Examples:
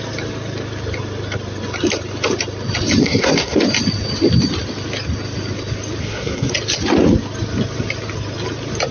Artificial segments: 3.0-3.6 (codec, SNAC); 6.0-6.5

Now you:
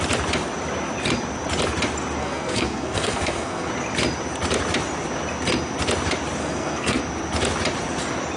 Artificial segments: 2.2-3.7 (codec, SNAC); 6.4-7.0

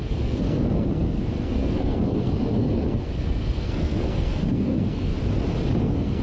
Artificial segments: 0.0-5.1 (codec, SNAC); 5.8-6.2